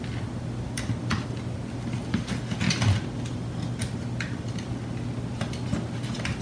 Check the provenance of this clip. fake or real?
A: real